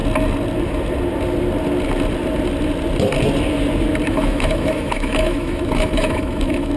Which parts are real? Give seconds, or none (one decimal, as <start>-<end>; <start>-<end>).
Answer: 0.0-4.1